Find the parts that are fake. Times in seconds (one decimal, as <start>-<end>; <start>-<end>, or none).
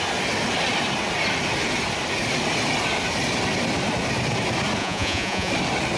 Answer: 4.8-5.5